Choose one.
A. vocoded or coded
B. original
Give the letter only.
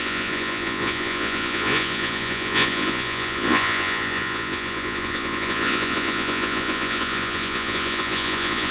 A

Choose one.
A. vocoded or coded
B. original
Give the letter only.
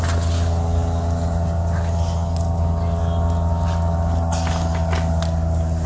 B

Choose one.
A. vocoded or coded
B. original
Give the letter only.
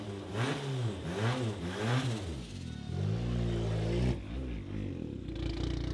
B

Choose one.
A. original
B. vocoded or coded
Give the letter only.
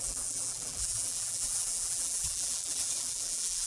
B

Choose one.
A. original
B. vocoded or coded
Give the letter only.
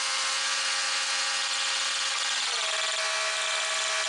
A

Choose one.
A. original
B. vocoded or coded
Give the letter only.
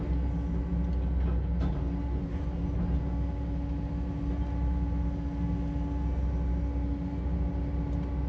A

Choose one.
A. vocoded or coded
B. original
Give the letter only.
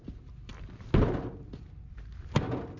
B